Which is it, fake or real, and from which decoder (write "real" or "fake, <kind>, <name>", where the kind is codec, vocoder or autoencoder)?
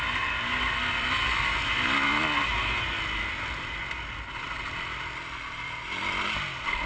real